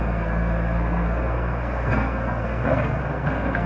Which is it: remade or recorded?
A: remade